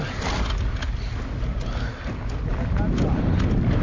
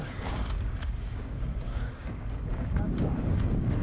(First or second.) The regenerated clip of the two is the second